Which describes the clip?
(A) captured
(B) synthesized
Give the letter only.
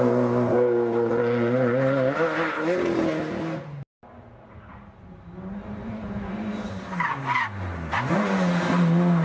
A